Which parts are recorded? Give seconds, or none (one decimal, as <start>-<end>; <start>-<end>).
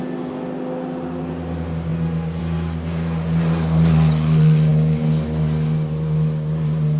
0.0-7.0